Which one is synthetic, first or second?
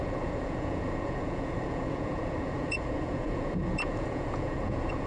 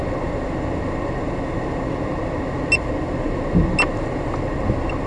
first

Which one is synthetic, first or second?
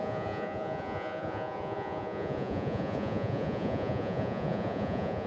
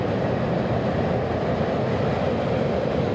first